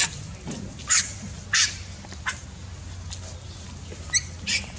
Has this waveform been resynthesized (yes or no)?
no